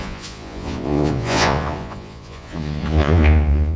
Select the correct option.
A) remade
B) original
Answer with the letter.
A